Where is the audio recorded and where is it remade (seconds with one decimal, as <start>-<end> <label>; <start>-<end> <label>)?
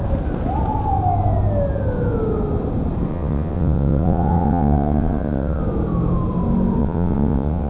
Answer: 0.0-3.1 recorded; 3.1-5.6 remade; 5.6-6.8 recorded; 6.8-7.7 remade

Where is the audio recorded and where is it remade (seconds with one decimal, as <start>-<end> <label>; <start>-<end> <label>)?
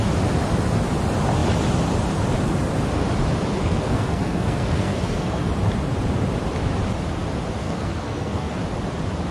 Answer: 0.0-3.6 recorded; 3.6-5.5 remade; 5.5-7.6 recorded; 7.6-8.6 remade; 8.6-9.3 recorded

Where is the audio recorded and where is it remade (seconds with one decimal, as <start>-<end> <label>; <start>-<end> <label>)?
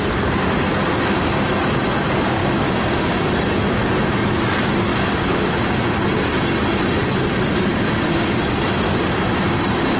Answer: 0.0-0.8 recorded; 0.8-1.3 remade; 1.3-2.4 recorded; 2.4-3.2 remade; 3.2-4.9 recorded; 4.9-5.4 remade; 5.4-10.0 recorded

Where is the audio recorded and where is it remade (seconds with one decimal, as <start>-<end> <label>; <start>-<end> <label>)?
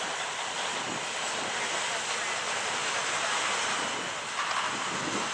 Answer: 0.0-5.3 recorded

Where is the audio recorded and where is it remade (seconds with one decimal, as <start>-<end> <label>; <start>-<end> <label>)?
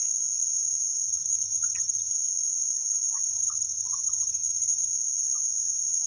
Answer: 0.0-1.1 recorded; 1.1-2.1 remade; 2.1-3.3 recorded; 3.3-4.9 remade; 4.9-6.1 recorded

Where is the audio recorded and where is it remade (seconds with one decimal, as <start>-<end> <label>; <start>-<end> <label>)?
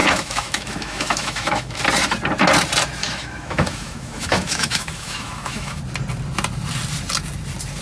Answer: 0.0-1.8 remade; 1.8-3.0 recorded; 3.0-5.8 remade; 5.8-7.8 recorded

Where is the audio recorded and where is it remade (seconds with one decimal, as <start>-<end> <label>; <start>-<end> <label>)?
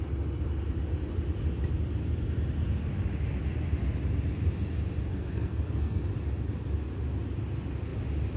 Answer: 0.0-5.1 recorded; 5.1-6.0 remade; 6.0-8.4 recorded